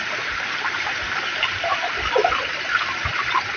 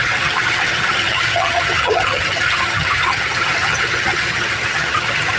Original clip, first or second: first